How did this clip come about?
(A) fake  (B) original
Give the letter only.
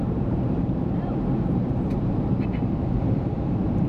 A